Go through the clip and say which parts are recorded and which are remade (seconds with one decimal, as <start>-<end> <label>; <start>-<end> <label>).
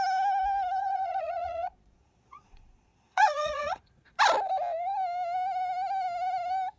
0.0-0.8 recorded; 0.8-4.2 remade; 4.2-6.8 recorded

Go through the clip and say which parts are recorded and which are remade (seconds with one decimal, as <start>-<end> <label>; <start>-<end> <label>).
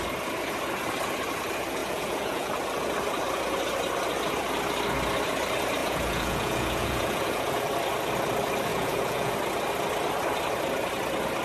0.0-1.8 recorded; 1.8-2.5 remade; 2.5-5.8 recorded; 5.8-7.7 remade; 7.7-8.7 recorded; 8.7-9.3 remade; 9.3-11.4 recorded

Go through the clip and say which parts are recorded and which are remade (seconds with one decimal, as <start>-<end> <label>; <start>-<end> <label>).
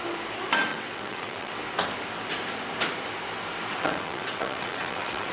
0.0-0.7 recorded; 0.7-1.5 remade; 1.5-3.7 recorded; 3.7-5.3 remade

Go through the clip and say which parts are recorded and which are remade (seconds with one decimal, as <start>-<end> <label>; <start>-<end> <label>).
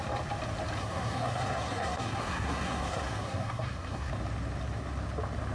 0.0-0.8 recorded; 0.8-4.1 remade; 4.1-5.5 recorded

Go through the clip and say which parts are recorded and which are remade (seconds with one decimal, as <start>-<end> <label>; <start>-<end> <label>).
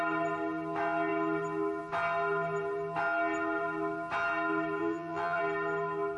0.0-4.8 recorded; 4.8-5.4 remade; 5.4-6.2 recorded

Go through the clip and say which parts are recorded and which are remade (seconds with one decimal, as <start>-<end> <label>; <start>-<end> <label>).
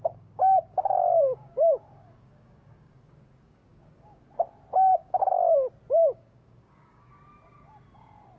0.0-4.2 remade; 4.2-4.9 recorded; 4.9-5.4 remade; 5.4-6.0 recorded; 6.0-7.1 remade; 7.1-8.4 recorded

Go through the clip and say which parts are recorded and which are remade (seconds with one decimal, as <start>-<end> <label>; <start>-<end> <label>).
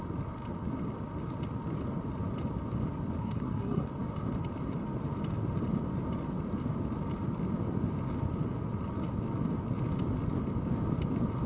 0.0-3.2 recorded; 3.2-3.9 remade; 3.9-11.5 recorded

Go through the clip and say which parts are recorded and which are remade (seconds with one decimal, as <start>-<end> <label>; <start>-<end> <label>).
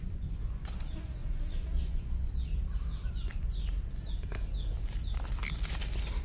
0.0-1.2 remade; 1.2-1.8 recorded; 1.8-2.5 remade; 2.5-3.1 recorded; 3.1-3.6 remade; 3.6-6.2 recorded